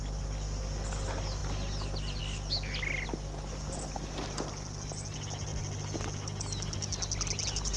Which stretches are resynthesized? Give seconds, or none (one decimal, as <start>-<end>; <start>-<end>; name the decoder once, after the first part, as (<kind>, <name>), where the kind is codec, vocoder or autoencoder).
none